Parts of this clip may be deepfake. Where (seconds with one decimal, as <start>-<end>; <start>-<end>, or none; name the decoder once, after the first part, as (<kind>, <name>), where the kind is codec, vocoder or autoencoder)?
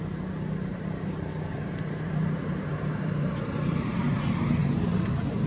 0.7-4.0 (vocoder, BigVGAN v2); 4.6-5.1